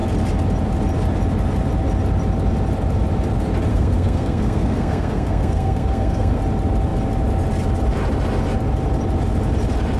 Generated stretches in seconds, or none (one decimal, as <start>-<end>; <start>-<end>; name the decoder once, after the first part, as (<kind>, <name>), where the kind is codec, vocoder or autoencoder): 3.7-6.4 (codec, SNAC)